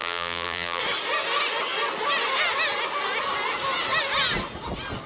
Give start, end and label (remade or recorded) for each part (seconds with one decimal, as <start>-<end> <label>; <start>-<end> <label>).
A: 0.0-0.8 remade; 0.8-5.1 recorded

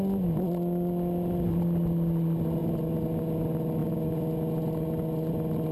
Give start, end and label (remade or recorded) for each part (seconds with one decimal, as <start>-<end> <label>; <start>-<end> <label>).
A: 0.0-5.7 recorded

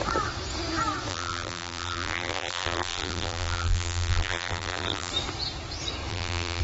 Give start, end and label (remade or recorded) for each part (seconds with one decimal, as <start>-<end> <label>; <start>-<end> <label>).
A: 0.0-1.1 recorded; 1.1-5.1 remade; 5.1-6.1 recorded; 6.1-6.6 remade

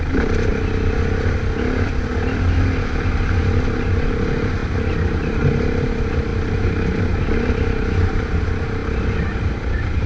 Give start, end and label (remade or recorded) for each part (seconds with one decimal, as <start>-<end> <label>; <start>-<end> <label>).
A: 0.0-0.5 remade; 0.5-3.5 recorded; 3.5-8.8 remade; 8.8-9.5 recorded; 9.5-10.1 remade

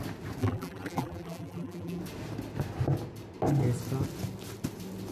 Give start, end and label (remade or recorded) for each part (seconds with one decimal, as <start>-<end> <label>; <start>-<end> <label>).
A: 0.0-0.4 recorded; 0.4-2.0 remade; 2.0-5.1 recorded

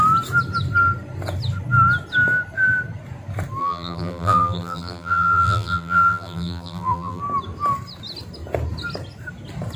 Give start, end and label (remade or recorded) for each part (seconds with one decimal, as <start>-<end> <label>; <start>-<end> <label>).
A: 0.0-3.6 recorded; 3.6-7.2 remade; 7.2-9.8 recorded